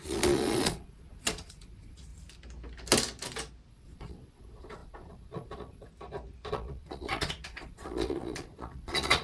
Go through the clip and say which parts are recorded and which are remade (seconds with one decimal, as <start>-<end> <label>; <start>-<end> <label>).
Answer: 0.0-2.1 remade; 2.1-3.7 recorded; 3.7-5.9 remade; 5.9-6.5 recorded; 6.5-9.2 remade